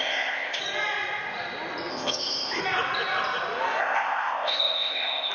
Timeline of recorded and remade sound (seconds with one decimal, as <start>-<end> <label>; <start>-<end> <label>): 0.0-0.6 remade; 0.6-1.9 recorded; 1.9-2.6 remade; 2.6-3.8 recorded; 3.8-5.3 remade